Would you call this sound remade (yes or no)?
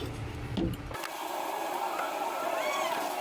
no